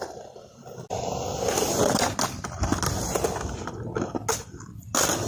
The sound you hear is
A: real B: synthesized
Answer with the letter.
A